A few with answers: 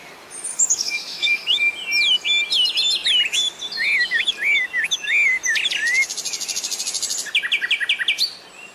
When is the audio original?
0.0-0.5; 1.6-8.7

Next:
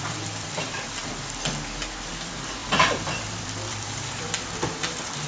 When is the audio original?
1.0-2.1